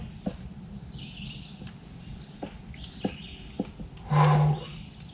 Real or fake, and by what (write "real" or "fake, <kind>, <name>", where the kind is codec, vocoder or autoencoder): real